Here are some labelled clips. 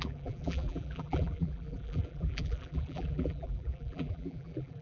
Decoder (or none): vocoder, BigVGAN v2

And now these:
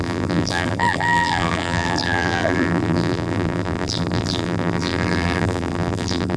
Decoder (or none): vocoder, BigVGAN v2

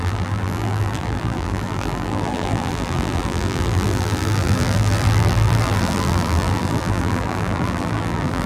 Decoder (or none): vocoder, BigVGAN v2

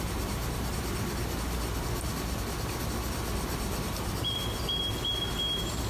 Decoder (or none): none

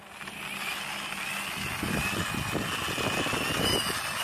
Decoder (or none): none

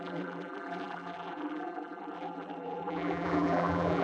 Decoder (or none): vocoder, BigVGAN v2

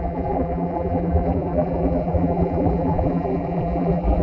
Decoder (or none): vocoder, BigVGAN v2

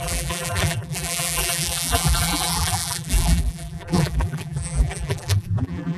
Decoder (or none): vocoder, BigVGAN v2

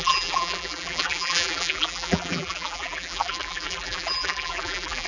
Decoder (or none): vocoder, BigVGAN v2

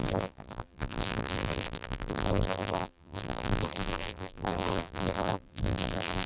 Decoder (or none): vocoder, BigVGAN v2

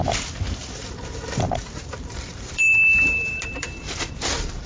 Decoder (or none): vocoder, BigVGAN v2